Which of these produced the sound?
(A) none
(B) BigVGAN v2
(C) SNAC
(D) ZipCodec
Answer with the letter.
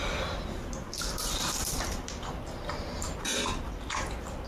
A